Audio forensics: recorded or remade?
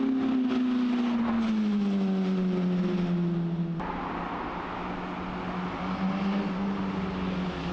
recorded